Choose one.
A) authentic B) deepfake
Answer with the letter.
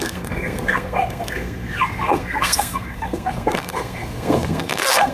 B